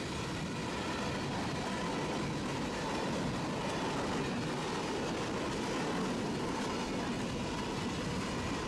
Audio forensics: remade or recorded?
recorded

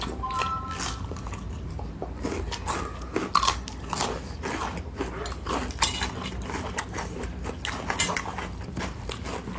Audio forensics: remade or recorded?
recorded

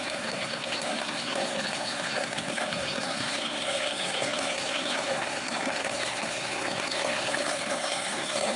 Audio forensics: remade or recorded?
remade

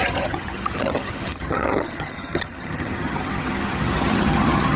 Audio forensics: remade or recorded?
remade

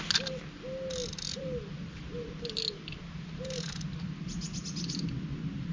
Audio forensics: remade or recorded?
recorded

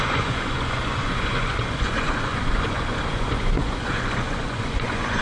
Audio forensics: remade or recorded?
remade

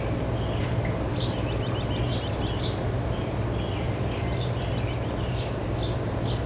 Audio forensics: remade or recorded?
recorded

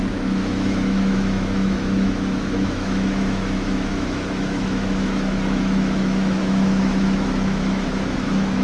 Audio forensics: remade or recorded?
remade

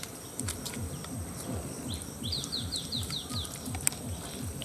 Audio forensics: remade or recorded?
recorded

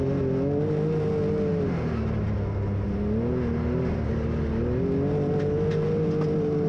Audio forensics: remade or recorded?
recorded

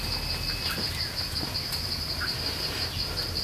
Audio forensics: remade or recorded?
recorded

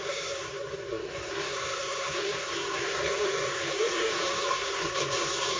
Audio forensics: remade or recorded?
remade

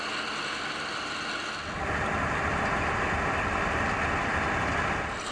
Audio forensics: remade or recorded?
recorded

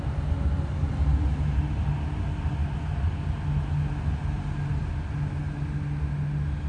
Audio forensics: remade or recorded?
recorded